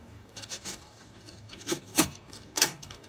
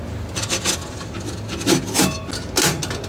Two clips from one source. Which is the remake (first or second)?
first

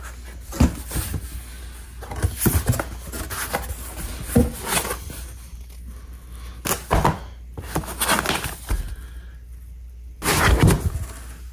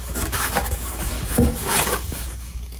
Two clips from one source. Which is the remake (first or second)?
second